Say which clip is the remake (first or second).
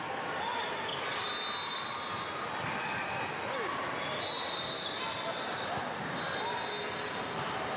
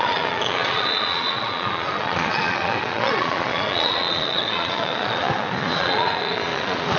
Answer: second